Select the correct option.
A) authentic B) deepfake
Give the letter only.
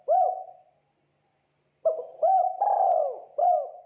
A